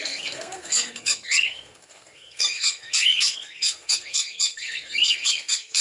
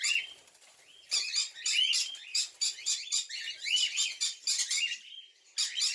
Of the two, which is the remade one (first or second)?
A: first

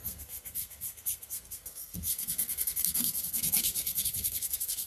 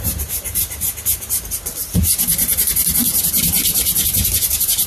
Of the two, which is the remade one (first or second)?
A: first